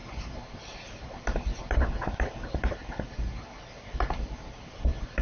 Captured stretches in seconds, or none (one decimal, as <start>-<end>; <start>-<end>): 0.0-5.2